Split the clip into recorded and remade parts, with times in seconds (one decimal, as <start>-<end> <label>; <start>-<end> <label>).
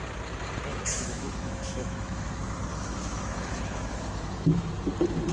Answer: 0.0-0.7 recorded; 0.7-2.3 remade; 2.3-2.7 recorded; 2.7-4.7 remade; 4.7-5.3 recorded